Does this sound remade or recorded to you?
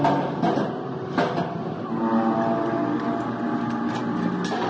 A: recorded